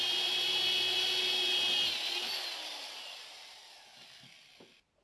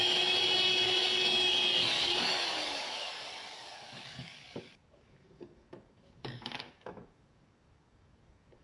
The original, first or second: first